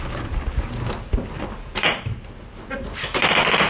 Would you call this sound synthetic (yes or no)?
no